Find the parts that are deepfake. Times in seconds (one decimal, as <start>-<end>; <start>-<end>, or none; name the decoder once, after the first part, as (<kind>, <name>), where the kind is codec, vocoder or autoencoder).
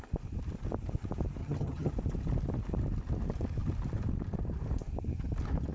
1.4-1.9 (vocoder, HiFi-GAN)